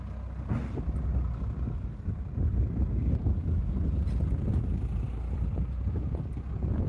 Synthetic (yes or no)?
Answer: no